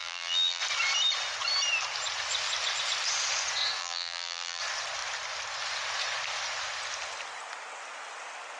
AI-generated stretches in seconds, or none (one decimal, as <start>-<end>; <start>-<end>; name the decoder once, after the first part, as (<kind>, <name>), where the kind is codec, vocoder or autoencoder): 0.0-0.6 (vocoder, BigVGAN v2); 3.8-4.6